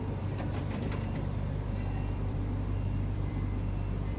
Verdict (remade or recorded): remade